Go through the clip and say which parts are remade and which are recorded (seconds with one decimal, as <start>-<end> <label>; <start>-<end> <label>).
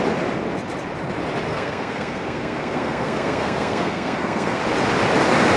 0.0-1.5 recorded; 1.5-4.6 remade; 4.6-5.6 recorded